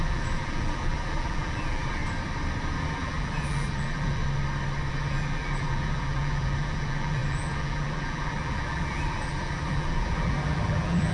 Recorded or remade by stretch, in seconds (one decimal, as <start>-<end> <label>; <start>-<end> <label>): 0.0-2.0 remade; 2.0-2.8 recorded; 2.8-4.2 remade; 4.2-4.9 recorded; 4.9-11.1 remade